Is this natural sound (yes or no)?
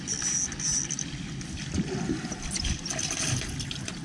yes